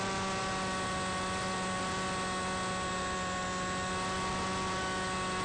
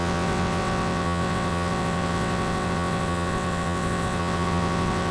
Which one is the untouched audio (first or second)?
first